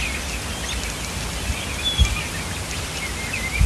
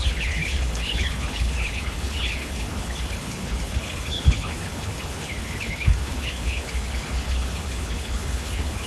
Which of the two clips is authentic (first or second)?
first